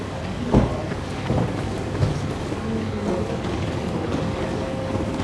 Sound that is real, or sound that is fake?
fake